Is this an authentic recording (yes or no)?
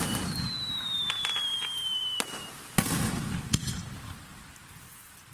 yes